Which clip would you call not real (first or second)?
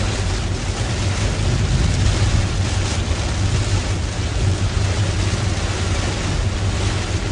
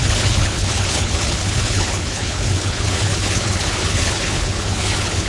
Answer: second